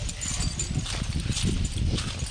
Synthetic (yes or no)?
no